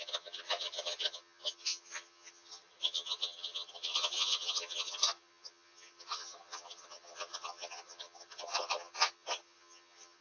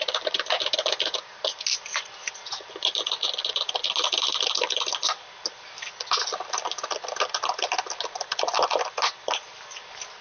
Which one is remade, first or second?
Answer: first